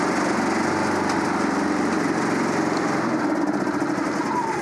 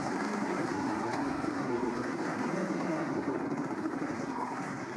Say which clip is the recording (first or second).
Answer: first